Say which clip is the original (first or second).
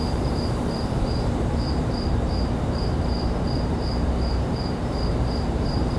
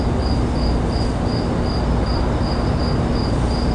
second